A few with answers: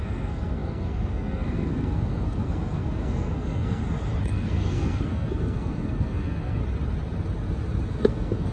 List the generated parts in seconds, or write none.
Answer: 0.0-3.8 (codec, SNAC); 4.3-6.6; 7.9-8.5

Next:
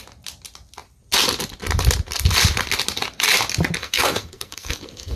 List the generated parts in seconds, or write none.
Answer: 3.8-5.2 (codec, SNAC)

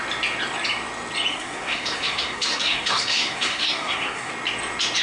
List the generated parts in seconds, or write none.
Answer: 1.3-4.3 (codec, SNAC)

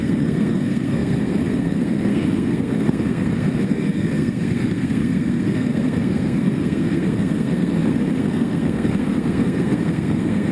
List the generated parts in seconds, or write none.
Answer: 0.0-10.5 (codec, SNAC)